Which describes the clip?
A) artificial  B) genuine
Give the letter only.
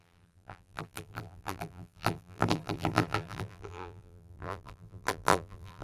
A